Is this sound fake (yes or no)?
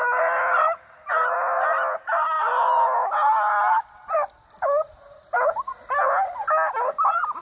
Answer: no